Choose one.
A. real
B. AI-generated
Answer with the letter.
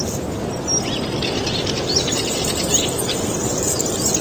A